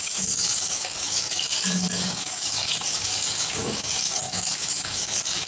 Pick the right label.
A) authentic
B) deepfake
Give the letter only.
B